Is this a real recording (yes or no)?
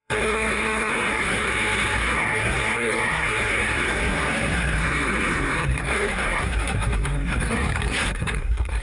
no